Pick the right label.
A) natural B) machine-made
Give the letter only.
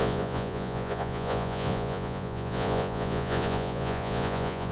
B